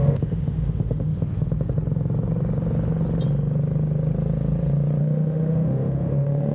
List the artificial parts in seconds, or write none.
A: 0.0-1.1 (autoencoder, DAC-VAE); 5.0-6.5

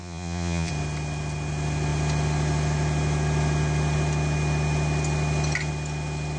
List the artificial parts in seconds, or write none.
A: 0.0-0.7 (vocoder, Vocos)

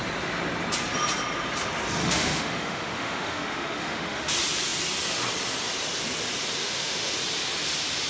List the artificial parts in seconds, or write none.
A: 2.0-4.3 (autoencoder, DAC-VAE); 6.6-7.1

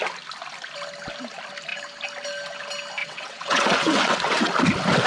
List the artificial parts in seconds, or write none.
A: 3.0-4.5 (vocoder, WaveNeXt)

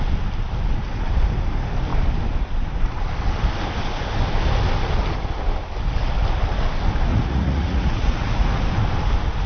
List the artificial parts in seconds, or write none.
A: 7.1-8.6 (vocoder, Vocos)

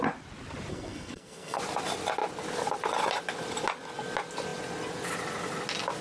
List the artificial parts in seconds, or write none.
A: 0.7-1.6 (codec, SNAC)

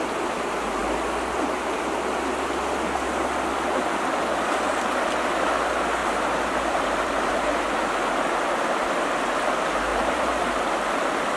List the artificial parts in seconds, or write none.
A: 6.0-7.7 (vocoder, BigVGAN v2); 9.9-10.6